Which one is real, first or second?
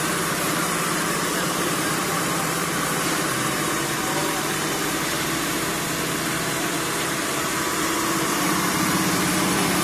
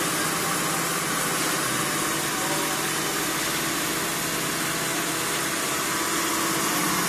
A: second